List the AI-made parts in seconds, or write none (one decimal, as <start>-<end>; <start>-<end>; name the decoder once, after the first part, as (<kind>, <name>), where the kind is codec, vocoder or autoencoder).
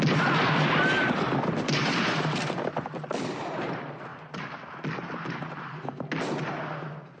none